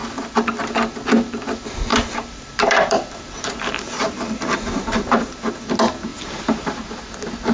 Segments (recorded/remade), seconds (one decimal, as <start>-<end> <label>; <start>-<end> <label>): 0.0-1.9 recorded; 1.9-5.6 remade; 5.6-6.1 recorded; 6.1-7.0 remade; 7.0-7.5 recorded